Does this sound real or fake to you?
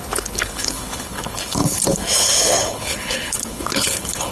fake